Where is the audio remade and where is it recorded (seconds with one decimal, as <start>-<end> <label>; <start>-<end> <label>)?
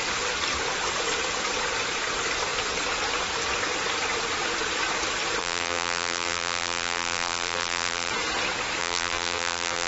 0.0-5.4 recorded; 5.4-8.1 remade; 8.1-8.8 recorded; 8.8-9.9 remade